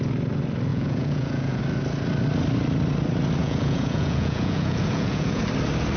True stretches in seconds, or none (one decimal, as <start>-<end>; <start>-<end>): 0.0-0.7; 1.6-3.4; 5.4-6.0